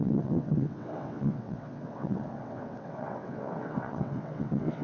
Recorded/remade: remade